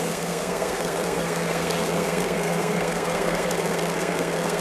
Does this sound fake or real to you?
fake